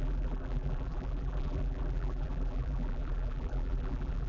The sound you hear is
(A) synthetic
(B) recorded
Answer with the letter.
A